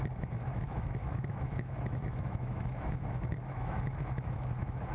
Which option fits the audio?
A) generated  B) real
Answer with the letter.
A